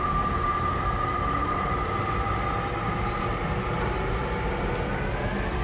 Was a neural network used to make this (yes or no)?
no